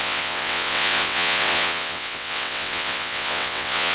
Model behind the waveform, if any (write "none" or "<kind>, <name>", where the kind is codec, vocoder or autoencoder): vocoder, WaveNeXt